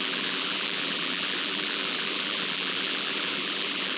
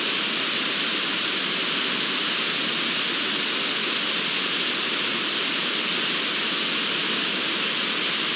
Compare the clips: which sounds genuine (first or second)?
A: second